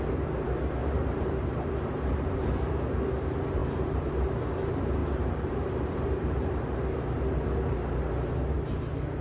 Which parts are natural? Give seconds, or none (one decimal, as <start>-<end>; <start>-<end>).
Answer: 0.0-0.8; 2.7-3.6; 4.1-5.0; 7.4-9.2